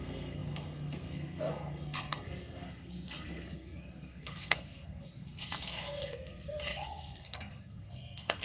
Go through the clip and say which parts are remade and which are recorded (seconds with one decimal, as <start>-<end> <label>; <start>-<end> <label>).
0.0-8.4 remade